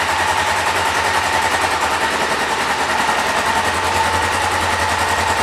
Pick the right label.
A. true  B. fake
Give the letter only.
A